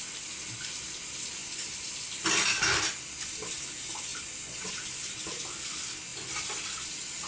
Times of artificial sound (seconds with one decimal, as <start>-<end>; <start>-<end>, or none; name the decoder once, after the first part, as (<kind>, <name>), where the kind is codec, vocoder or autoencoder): none